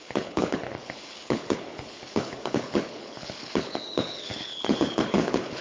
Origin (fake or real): fake